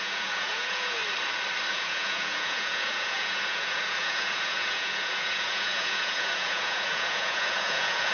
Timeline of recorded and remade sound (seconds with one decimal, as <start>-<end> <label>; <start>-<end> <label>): 0.0-1.0 remade; 1.0-1.7 recorded; 1.7-8.1 remade